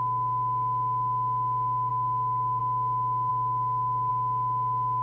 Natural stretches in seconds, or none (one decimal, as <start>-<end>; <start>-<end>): 0.0-1.9; 2.6-3.3; 4.1-5.0